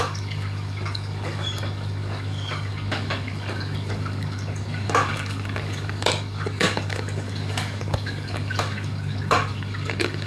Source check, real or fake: fake